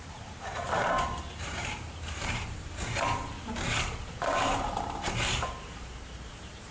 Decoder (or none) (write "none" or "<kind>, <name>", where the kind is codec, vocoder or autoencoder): vocoder, BigVGAN v2